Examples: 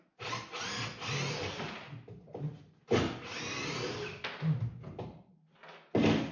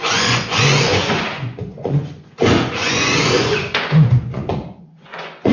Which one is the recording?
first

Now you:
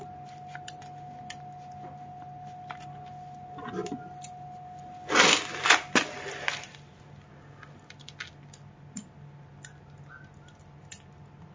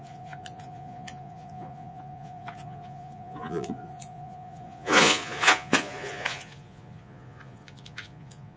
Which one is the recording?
first